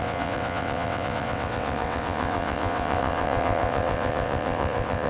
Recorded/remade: remade